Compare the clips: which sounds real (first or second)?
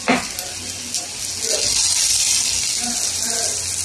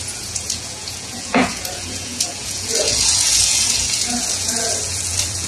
first